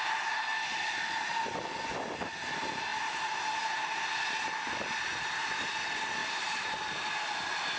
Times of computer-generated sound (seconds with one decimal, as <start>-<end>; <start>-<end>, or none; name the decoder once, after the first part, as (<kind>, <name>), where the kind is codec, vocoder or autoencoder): 2.9-3.8 (vocoder, BigVGAN v2); 6.2-6.8